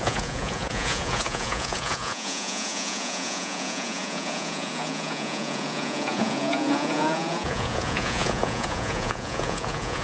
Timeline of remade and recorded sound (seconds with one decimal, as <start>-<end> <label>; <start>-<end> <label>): 0.0-10.0 remade